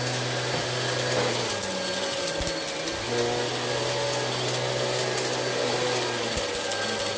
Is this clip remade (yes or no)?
no